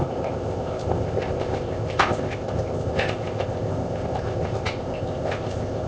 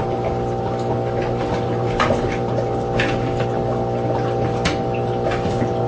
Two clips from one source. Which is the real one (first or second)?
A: second